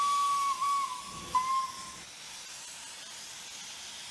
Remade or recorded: recorded